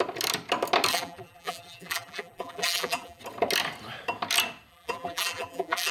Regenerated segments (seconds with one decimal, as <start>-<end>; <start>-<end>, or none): 0.9-3.2; 4.7-5.9